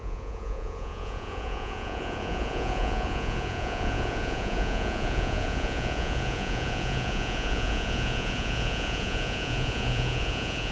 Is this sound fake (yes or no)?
yes